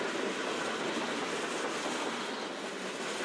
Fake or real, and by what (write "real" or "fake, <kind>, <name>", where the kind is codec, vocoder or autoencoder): real